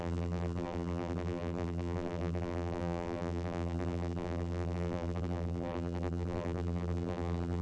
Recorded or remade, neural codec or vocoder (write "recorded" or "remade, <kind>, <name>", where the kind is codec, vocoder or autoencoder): remade, vocoder, BigVGAN v2